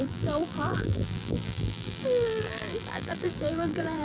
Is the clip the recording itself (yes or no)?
no